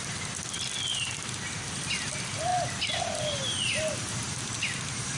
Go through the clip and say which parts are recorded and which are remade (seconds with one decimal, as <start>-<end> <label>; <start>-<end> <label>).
0.0-0.9 recorded; 0.9-1.9 remade; 1.9-5.2 recorded